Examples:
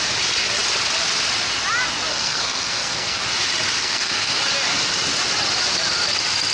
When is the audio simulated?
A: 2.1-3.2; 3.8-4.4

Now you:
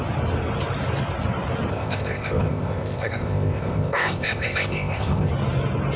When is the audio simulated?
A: 1.7-5.3

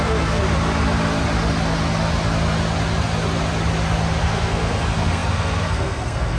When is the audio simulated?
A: 0.0-0.4; 4.2-6.4

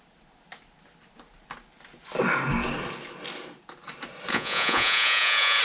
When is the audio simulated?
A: 4.3-5.6

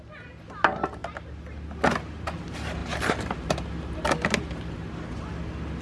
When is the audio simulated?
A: 2.8-3.7